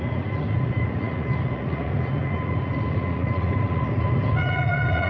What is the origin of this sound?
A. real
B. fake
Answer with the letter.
B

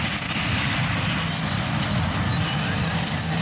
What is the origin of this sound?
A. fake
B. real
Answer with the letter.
B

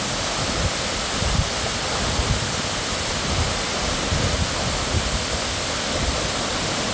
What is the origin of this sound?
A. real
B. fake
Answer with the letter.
A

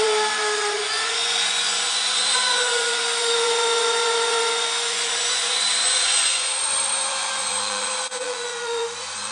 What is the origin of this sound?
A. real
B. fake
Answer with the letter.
B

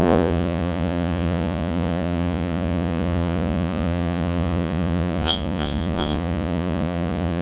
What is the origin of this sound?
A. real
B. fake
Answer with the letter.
B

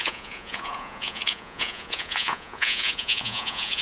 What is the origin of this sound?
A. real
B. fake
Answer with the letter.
B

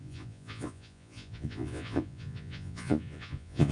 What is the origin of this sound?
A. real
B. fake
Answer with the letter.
B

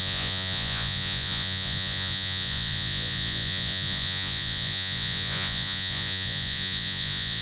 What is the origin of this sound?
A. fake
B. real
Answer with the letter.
A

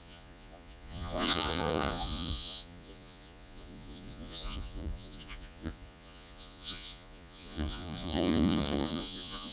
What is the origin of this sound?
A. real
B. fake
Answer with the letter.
B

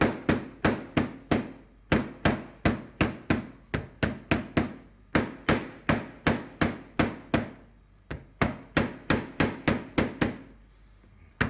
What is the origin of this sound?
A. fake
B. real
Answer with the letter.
B